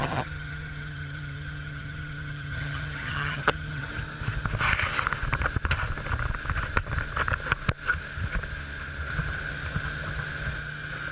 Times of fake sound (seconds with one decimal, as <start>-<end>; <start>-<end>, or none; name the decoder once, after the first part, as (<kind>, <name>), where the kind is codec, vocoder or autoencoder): 0.0-3.9 (vocoder, HiFi-GAN)